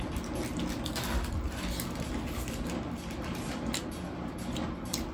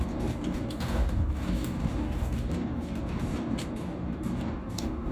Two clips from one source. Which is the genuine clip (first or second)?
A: first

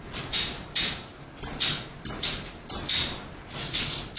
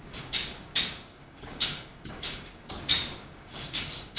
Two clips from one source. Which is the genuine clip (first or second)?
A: first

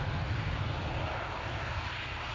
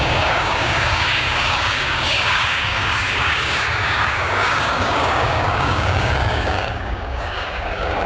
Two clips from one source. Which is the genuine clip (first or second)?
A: first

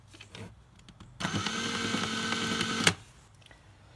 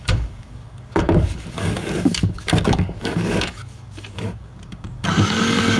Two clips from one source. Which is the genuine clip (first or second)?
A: first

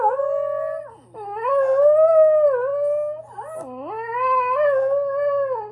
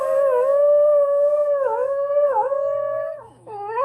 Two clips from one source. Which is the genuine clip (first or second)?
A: first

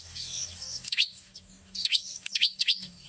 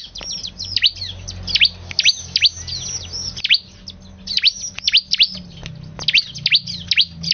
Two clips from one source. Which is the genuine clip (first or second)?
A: second